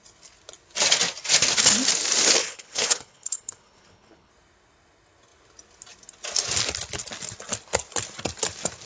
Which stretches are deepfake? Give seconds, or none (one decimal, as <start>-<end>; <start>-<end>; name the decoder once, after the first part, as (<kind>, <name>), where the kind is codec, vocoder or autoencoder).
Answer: 2.4-4.3 (codec, HILCodec)